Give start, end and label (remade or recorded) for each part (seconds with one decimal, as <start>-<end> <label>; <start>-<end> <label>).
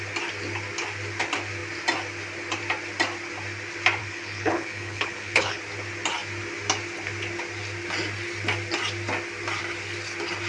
0.0-4.0 recorded; 4.0-5.6 remade; 5.6-10.5 recorded